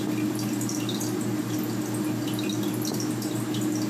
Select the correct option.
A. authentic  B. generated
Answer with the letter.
A